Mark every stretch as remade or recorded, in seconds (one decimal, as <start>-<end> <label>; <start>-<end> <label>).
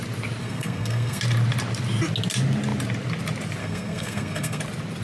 0.0-0.4 recorded; 0.4-1.2 remade; 1.2-3.6 recorded; 3.6-4.6 remade; 4.6-5.0 recorded